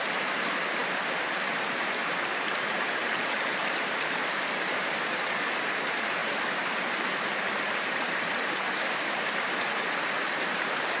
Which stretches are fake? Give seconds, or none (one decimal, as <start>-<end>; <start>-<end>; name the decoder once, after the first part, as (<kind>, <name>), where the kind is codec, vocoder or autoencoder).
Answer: 0.0-11.0 (vocoder, BigVGAN v2)